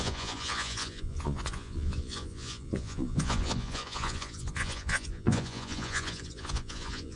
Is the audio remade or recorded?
remade